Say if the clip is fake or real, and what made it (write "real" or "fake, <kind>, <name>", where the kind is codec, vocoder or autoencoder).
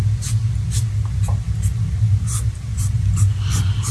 real